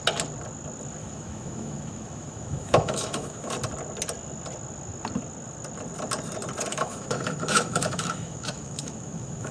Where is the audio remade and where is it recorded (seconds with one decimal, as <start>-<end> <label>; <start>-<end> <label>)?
0.0-1.0 recorded; 1.0-3.5 remade; 3.5-6.7 recorded; 6.7-9.5 remade